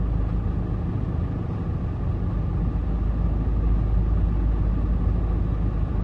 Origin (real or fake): real